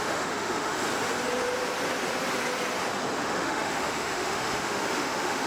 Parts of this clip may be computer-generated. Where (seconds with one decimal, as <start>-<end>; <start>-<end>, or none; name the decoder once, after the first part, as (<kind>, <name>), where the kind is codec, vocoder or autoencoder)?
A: 0.0-0.7 (autoencoder, DAC-VAE); 3.2-5.5